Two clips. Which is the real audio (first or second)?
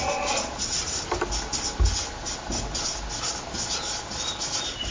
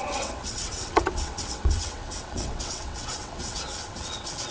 first